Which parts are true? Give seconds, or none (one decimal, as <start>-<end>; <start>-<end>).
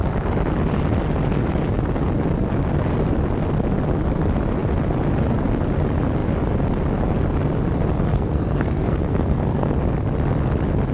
0.0-8.1; 9.8-10.9